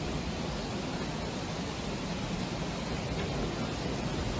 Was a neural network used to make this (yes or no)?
no